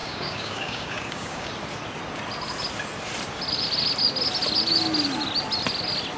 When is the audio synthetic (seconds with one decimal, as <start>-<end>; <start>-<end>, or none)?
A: 0.0-1.5